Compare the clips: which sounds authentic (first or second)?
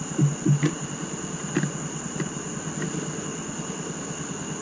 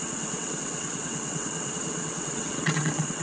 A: first